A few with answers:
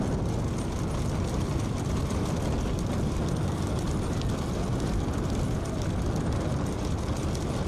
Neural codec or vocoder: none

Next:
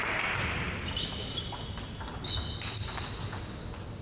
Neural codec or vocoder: none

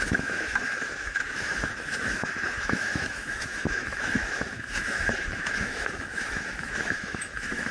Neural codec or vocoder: autoencoder, DAC-VAE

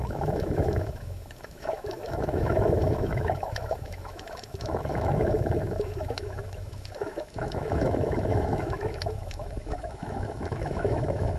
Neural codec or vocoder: autoencoder, DAC-VAE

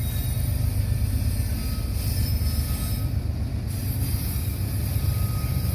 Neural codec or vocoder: none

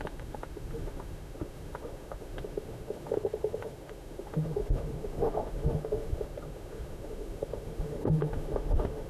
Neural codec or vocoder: autoencoder, DAC-VAE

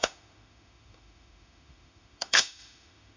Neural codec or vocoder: autoencoder, DAC-VAE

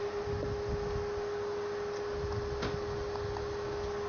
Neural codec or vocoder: none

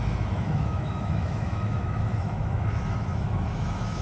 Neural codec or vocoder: autoencoder, DAC-VAE